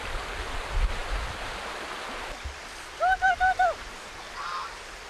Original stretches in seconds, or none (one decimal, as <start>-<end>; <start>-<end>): 0.0-5.1